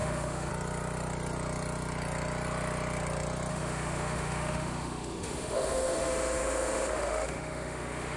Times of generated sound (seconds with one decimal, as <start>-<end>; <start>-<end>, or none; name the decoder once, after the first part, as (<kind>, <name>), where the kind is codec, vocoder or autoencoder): 0.0-0.5 (autoencoder, DAC-VAE); 3.5-8.2